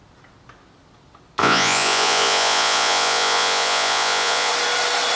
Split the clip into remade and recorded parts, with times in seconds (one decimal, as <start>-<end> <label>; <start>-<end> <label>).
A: 0.0-1.4 recorded; 1.4-4.5 remade; 4.5-5.2 recorded